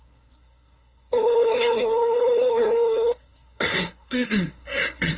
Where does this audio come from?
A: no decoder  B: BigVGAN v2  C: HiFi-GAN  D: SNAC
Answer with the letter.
D